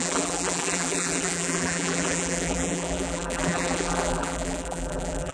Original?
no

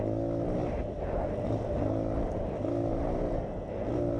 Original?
yes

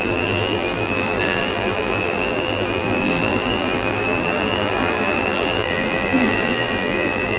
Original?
no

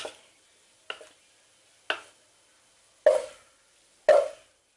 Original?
yes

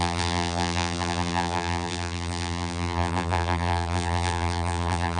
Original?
no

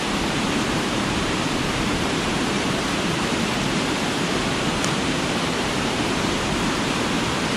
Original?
no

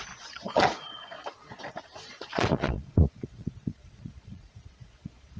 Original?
no